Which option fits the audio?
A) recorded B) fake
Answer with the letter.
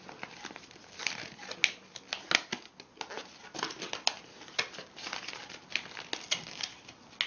A